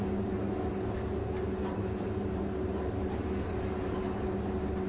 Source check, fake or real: real